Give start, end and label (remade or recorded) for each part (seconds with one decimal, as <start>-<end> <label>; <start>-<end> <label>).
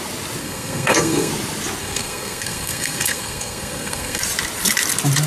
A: 0.0-0.4 recorded; 0.4-1.3 remade; 1.3-1.8 recorded; 1.8-4.2 remade; 4.2-5.3 recorded